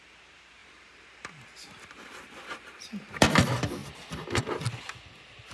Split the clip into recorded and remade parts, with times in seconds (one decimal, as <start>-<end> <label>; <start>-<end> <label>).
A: 0.0-0.6 recorded; 0.6-3.3 remade; 3.3-3.8 recorded; 3.8-4.4 remade; 4.4-5.5 recorded